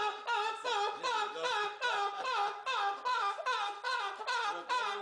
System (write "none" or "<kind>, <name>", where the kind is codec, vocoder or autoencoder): none